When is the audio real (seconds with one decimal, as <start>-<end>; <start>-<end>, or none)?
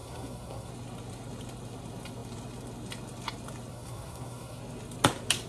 0.7-3.7; 4.6-5.5